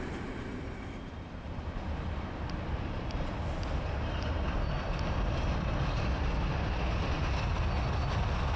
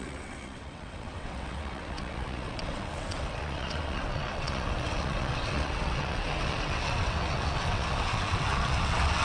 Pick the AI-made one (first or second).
second